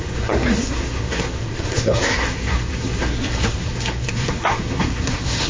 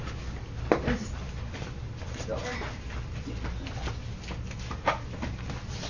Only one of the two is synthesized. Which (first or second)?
first